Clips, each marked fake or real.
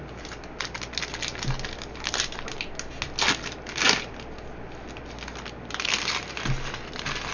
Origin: real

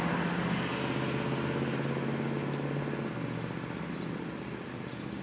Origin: real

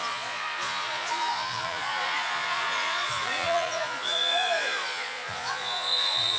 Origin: fake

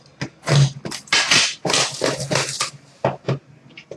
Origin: real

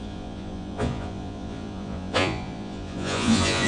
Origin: fake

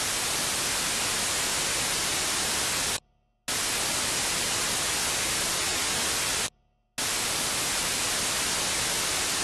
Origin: real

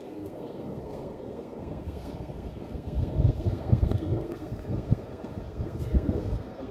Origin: fake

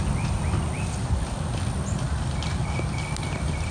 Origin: real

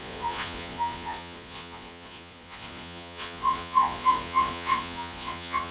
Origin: fake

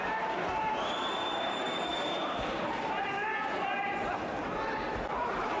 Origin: fake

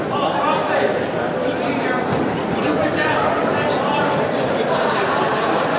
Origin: fake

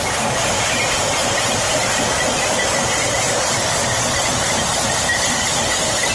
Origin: fake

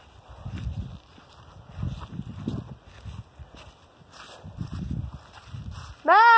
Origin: real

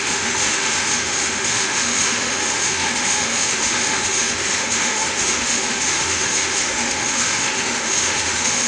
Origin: fake